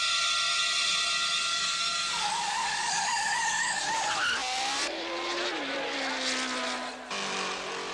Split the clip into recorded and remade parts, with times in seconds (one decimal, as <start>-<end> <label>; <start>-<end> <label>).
0.0-1.5 recorded; 1.5-3.8 remade; 3.8-7.9 recorded